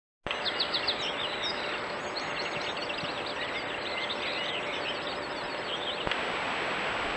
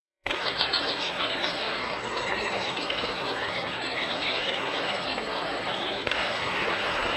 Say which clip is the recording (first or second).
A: first